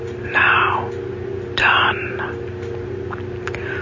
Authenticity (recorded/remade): recorded